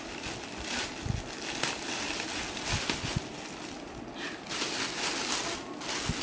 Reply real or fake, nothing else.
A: real